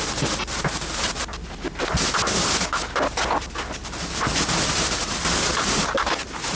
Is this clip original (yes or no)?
yes